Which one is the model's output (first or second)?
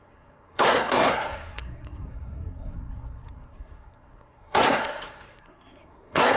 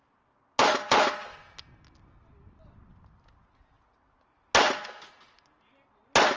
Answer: first